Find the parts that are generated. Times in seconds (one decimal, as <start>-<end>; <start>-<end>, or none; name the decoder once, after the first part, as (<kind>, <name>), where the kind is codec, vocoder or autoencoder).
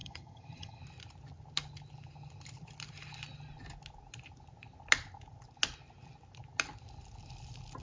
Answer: 0.0-0.8 (vocoder, HiFi-GAN)